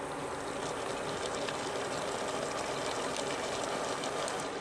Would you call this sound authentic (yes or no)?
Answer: yes